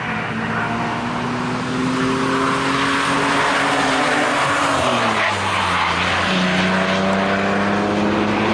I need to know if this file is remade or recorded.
recorded